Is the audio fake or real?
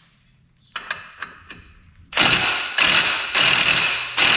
real